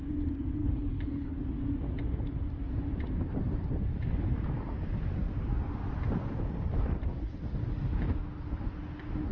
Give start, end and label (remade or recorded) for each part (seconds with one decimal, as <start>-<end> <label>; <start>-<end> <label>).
0.0-0.6 recorded; 0.6-1.4 remade; 1.4-9.3 recorded